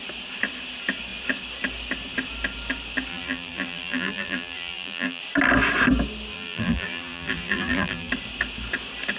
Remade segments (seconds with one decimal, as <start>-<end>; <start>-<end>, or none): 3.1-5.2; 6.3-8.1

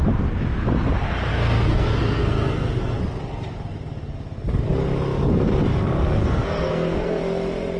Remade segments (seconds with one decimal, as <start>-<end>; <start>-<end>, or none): 1.3-3.0; 6.2-7.2

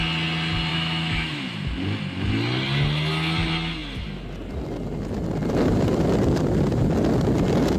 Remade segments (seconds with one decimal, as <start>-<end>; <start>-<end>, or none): 0.7-1.4

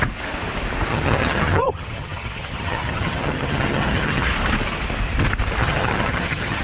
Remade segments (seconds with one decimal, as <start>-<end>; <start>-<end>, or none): 0.9-4.3; 5.6-6.6

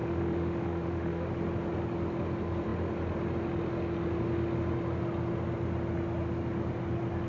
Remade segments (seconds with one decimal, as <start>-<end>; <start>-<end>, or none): 0.0-1.3

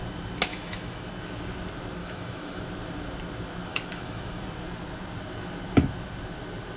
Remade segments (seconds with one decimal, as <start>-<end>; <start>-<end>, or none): 0.5-1.1; 2.0-2.6; 3.7-4.4